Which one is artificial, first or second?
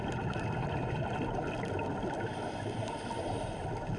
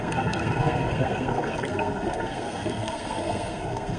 second